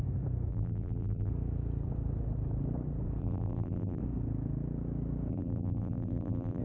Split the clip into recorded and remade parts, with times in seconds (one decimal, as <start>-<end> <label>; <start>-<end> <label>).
0.0-0.5 recorded; 0.5-1.3 remade; 1.3-3.2 recorded; 3.2-4.0 remade; 4.0-5.3 recorded; 5.3-6.6 remade